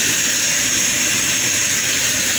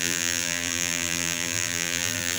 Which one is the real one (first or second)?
first